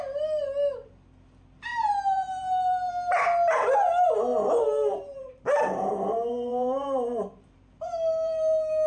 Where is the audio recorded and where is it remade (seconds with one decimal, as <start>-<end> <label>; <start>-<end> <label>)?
0.0-1.7 recorded; 1.7-2.9 remade; 2.9-4.3 recorded; 4.3-8.9 remade